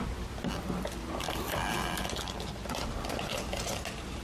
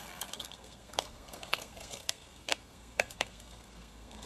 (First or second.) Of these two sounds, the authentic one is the first